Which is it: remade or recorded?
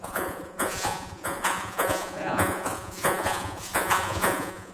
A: remade